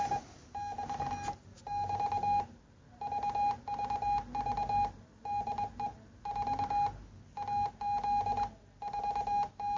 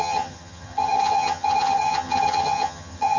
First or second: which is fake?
second